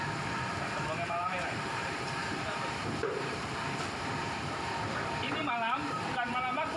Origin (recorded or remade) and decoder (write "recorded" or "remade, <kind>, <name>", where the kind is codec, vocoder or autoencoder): remade, vocoder, BigVGAN v2